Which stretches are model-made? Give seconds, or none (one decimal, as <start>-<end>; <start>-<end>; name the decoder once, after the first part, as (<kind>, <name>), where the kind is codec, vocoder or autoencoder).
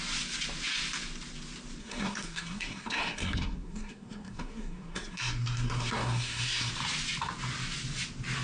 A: 1.8-6.7 (codec, SNAC)